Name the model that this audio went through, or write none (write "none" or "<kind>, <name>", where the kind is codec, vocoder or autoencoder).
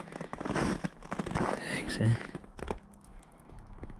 autoencoder, DAC-VAE